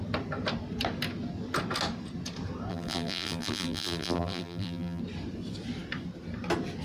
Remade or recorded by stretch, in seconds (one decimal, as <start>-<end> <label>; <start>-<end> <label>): 0.0-2.7 recorded; 2.7-5.0 remade; 5.0-6.8 recorded